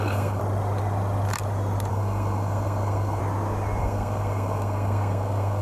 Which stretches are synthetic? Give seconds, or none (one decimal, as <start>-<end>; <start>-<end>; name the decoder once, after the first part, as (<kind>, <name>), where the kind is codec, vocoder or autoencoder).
0.0-0.4 (codec, SNAC); 1.9-3.2; 3.8-5.6